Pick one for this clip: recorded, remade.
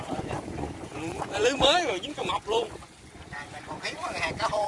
remade